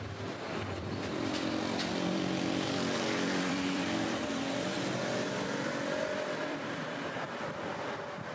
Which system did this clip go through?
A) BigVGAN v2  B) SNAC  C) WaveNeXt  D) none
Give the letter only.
A